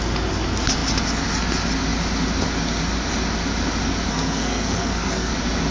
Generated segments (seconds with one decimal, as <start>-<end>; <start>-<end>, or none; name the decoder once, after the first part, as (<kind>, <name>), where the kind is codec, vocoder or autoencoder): 4.1-5.3 (codec, SNAC)